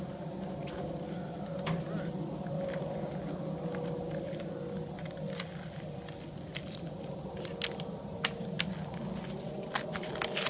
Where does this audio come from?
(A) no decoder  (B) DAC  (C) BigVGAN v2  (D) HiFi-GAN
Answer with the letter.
A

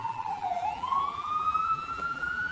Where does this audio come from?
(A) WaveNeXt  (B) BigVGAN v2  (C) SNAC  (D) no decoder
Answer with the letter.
B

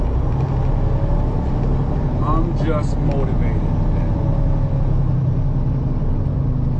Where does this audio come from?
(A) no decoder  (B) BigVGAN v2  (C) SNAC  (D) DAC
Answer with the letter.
A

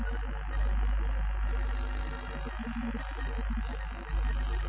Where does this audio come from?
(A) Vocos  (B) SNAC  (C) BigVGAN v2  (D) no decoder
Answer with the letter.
D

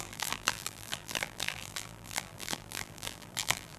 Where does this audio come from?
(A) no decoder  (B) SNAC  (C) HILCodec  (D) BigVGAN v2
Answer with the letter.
D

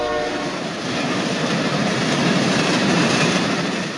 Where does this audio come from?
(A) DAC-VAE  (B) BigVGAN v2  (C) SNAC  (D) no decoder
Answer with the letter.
B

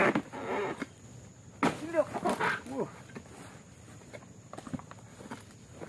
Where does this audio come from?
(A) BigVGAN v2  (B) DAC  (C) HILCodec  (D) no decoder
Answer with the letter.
D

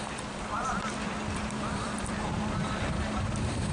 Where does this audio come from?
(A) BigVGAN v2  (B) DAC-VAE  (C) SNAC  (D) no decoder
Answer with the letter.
A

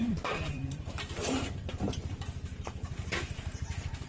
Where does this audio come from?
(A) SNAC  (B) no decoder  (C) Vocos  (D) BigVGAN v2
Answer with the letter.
D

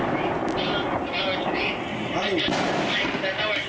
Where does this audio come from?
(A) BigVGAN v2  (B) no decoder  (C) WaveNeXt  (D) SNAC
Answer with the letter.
B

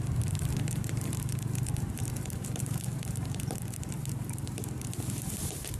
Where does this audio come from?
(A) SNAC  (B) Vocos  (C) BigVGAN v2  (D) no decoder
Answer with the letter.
C